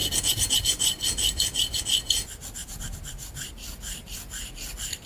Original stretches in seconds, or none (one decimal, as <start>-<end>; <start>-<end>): 0.0-2.6; 3.5-5.1

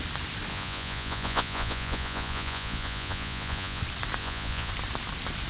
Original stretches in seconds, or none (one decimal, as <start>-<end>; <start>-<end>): 0.0-0.5; 3.8-4.2; 4.7-5.5

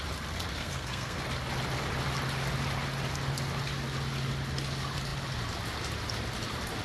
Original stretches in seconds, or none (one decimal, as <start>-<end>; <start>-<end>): 0.0-0.6; 1.2-6.8